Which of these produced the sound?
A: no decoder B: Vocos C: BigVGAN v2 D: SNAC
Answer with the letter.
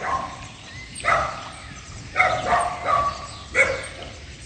A